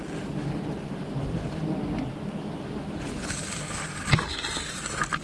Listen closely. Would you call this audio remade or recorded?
recorded